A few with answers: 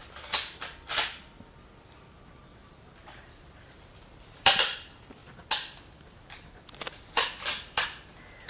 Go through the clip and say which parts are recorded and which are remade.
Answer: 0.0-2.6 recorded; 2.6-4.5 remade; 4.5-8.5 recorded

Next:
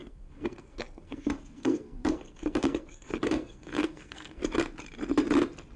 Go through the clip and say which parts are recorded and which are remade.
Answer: 0.0-4.4 remade; 4.4-5.8 recorded

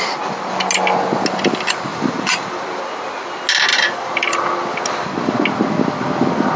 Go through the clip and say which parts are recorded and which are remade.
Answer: 0.0-1.9 recorded; 1.9-2.8 remade; 2.8-3.7 recorded; 3.7-4.5 remade; 4.5-6.6 recorded